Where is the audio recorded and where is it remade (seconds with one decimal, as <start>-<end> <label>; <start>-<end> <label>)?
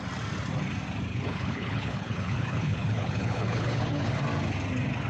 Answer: 0.0-1.1 recorded; 1.1-4.2 remade; 4.2-5.1 recorded